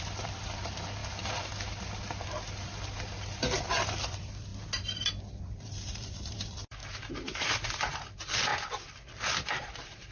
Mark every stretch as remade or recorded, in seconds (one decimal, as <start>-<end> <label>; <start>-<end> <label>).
0.0-1.0 remade; 1.0-4.0 recorded; 4.0-4.5 remade; 4.5-5.4 recorded; 5.4-6.8 remade; 6.8-7.9 recorded; 7.9-10.1 remade